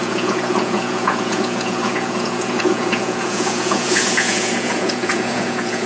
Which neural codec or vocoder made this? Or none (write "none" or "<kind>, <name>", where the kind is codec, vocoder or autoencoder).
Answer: vocoder, Vocos